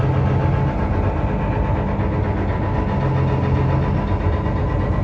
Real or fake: real